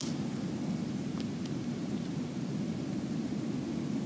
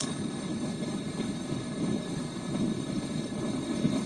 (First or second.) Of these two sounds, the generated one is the second